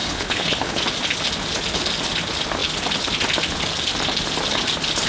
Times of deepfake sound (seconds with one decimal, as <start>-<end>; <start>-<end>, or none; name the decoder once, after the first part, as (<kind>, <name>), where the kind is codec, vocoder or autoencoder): 0.0-0.8 (codec, HILCodec)